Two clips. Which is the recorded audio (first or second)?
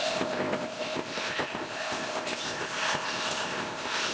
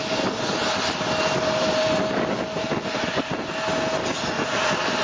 second